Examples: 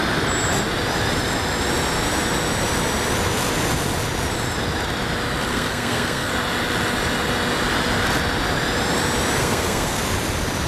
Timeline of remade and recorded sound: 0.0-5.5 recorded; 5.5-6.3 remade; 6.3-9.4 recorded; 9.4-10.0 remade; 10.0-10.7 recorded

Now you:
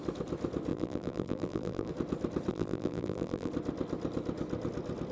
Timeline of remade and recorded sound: 0.0-0.7 recorded; 0.7-1.9 remade; 1.9-2.5 recorded; 2.5-3.5 remade; 3.5-5.1 recorded